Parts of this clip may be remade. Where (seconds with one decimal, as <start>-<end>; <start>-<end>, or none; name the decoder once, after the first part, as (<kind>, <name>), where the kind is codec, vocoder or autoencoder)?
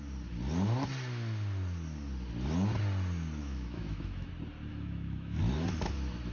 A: 3.4-4.3 (autoencoder, DAC-VAE); 4.7-5.4